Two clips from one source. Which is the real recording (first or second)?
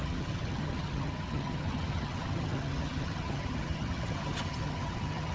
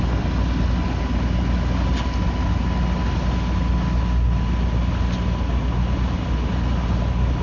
second